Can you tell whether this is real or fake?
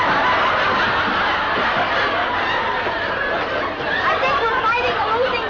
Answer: real